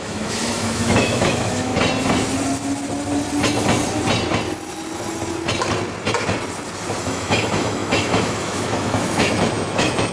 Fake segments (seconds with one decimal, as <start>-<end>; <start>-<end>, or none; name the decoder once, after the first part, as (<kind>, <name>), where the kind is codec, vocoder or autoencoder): 0.0-1.7 (autoencoder, DAC-VAE); 7.0-10.1